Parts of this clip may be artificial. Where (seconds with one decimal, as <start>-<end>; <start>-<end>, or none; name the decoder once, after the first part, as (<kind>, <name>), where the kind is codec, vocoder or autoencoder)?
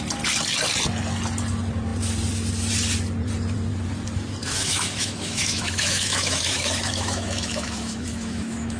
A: 4.4-8.8 (autoencoder, DAC-VAE)